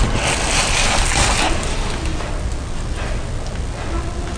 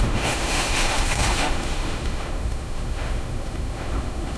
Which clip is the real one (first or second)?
first